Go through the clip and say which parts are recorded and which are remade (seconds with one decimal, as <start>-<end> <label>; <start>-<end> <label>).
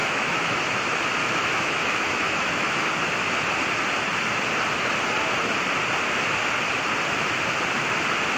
0.0-0.6 remade; 0.6-1.2 recorded; 1.2-2.8 remade; 2.8-8.4 recorded